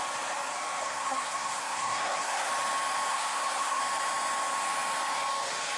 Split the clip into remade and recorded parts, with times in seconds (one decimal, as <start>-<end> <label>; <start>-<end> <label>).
0.0-0.8 recorded; 0.8-2.5 remade; 2.5-3.1 recorded; 3.1-3.8 remade; 3.8-5.8 recorded

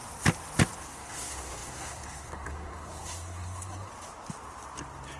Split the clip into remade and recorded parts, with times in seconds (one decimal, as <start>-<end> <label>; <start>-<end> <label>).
0.0-0.8 recorded; 0.8-3.9 remade; 3.9-5.2 recorded

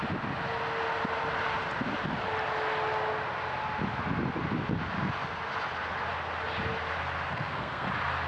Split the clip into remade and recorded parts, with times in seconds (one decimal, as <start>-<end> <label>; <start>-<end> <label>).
0.0-7.3 recorded; 7.3-7.9 remade; 7.9-8.3 recorded